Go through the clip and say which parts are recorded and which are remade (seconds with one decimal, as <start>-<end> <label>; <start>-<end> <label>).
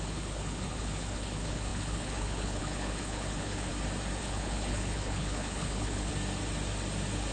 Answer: 0.0-3.7 remade; 3.7-4.2 recorded; 4.2-6.1 remade; 6.1-7.3 recorded